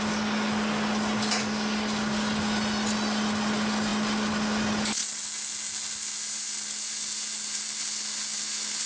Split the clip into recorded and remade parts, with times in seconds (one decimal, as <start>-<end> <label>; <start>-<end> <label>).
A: 0.0-8.9 recorded